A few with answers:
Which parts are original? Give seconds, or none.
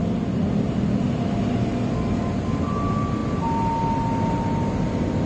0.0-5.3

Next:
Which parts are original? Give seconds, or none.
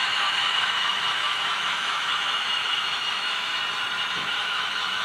3.5-4.1